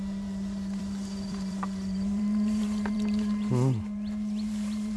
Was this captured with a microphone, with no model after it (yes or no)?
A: no